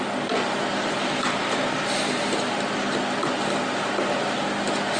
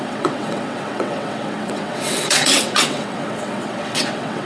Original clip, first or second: first